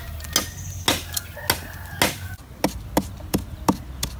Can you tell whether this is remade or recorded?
recorded